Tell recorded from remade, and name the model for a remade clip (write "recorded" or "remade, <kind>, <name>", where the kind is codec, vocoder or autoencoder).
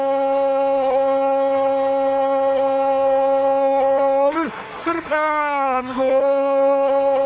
remade, codec, SNAC